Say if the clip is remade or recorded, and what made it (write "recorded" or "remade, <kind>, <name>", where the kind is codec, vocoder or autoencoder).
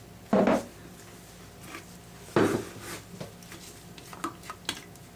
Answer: recorded